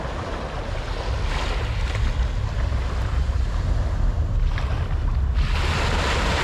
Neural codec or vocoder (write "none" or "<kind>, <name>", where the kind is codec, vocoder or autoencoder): none